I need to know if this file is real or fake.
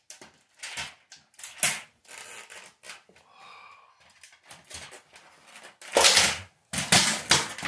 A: real